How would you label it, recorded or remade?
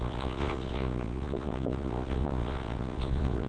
remade